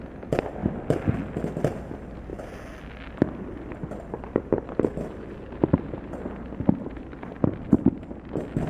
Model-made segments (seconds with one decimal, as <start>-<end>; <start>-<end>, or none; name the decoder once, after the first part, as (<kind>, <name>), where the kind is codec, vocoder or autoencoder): none